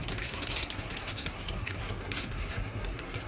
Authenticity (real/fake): fake